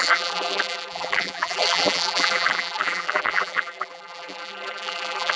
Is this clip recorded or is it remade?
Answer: remade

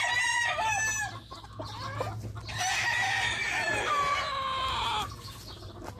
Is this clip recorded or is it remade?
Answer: recorded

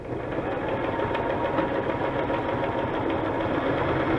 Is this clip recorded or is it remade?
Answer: recorded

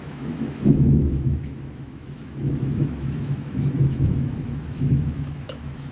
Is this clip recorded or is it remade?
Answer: remade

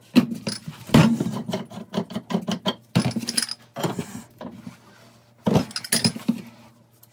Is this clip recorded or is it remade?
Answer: recorded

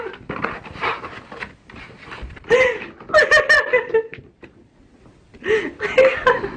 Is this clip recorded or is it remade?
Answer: recorded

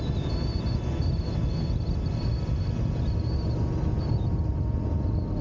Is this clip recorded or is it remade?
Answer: recorded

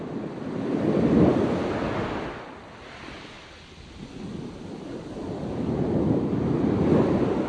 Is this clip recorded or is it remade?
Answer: recorded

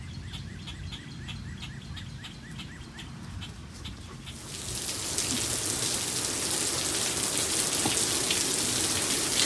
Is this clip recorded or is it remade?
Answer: recorded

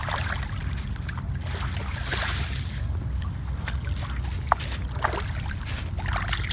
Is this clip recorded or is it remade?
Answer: recorded